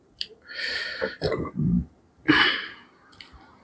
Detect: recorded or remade remade